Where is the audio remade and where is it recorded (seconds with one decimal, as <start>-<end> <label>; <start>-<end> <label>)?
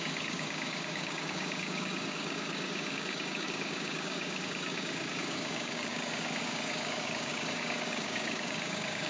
0.0-9.1 remade